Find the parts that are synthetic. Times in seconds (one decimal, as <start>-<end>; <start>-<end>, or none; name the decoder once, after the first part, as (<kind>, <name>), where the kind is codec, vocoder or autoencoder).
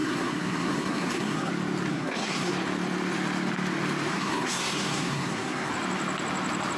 0.0-1.5 (codec, SNAC); 1.9-2.5; 4.1-5.7